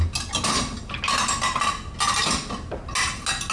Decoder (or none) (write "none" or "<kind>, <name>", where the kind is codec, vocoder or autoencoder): none